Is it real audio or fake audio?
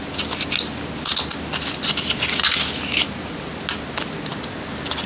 real